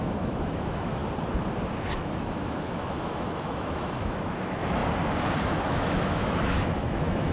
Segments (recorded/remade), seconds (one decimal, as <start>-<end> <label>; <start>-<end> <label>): 0.0-1.0 remade; 1.0-1.9 recorded; 1.9-4.8 remade; 4.8-5.6 recorded; 5.6-7.3 remade